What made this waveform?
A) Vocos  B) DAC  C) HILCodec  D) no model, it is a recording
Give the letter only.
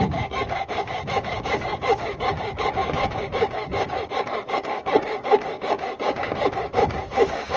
B